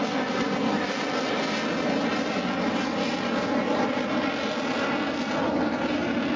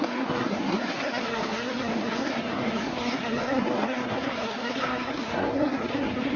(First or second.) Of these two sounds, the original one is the first